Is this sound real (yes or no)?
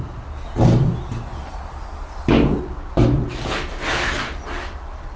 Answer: yes